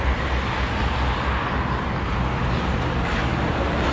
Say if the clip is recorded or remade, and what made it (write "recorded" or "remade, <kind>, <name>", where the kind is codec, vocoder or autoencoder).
recorded